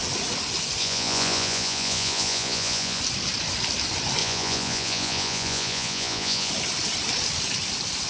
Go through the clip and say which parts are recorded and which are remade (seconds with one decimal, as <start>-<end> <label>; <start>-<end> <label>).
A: 0.0-0.8 recorded; 0.8-3.0 remade; 3.0-4.2 recorded; 4.2-6.5 remade; 6.5-8.1 recorded